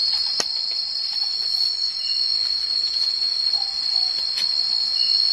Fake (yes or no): no